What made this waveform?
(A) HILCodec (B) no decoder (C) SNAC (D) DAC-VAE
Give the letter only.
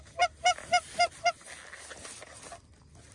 B